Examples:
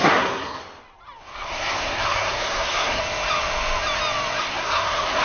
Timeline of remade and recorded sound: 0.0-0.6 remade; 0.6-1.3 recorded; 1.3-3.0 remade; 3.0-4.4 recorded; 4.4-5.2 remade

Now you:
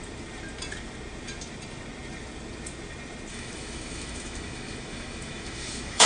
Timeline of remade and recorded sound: 0.0-3.3 recorded; 3.3-6.1 remade

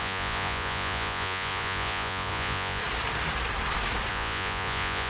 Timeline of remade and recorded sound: 0.0-2.8 remade; 2.8-4.1 recorded; 4.1-5.1 remade

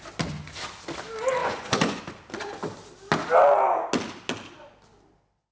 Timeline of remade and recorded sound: 0.0-1.4 recorded; 1.4-2.0 remade; 2.0-5.5 recorded

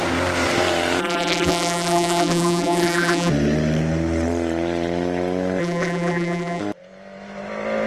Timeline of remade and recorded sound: 0.0-1.0 recorded; 1.0-3.3 remade; 3.3-5.6 recorded; 5.6-6.6 remade; 6.6-7.9 recorded

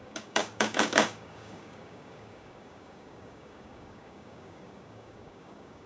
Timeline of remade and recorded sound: 0.0-5.9 remade

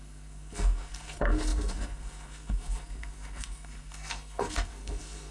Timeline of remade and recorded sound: 0.0-5.3 remade

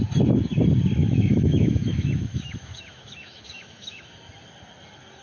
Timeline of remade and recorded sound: 0.0-1.0 recorded; 1.0-4.1 remade; 4.1-5.2 recorded